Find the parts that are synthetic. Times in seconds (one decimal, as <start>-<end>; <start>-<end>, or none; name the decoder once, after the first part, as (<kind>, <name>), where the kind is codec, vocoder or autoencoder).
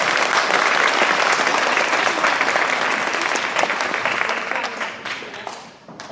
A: 1.5-2.4 (vocoder, BigVGAN v2); 4.7-6.1